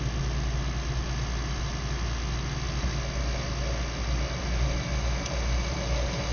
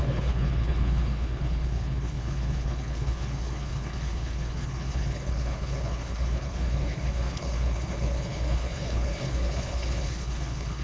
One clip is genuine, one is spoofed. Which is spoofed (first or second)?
second